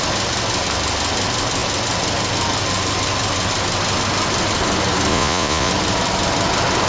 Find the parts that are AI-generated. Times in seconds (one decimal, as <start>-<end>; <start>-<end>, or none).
5.1-5.7